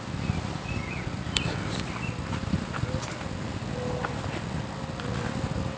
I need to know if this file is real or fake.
real